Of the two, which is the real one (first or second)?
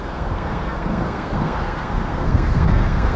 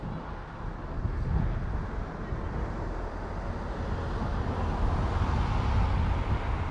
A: second